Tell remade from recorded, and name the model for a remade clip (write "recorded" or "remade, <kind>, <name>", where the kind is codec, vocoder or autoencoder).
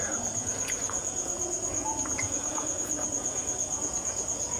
remade, vocoder, Vocos